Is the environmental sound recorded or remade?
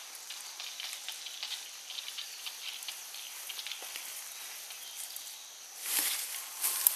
recorded